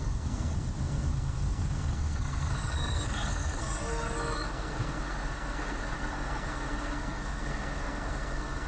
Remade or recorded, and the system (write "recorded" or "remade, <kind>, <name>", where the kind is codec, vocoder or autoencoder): remade, codec, SNAC